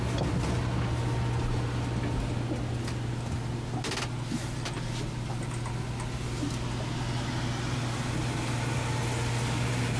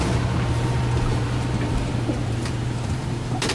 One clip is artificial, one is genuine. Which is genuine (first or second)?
first